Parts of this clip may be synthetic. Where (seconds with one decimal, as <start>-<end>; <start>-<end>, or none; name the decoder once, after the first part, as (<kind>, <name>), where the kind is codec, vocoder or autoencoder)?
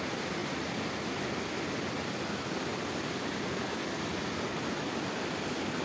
none